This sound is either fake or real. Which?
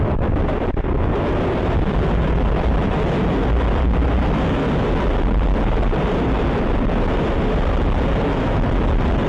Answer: real